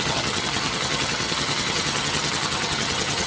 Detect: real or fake fake